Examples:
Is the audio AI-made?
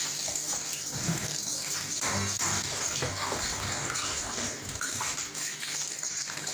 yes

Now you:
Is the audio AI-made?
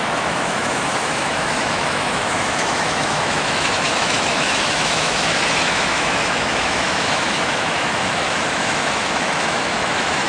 yes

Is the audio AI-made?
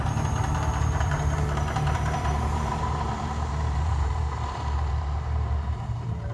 yes